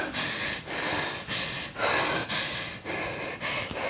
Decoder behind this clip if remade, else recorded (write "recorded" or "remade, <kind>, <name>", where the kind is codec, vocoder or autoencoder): recorded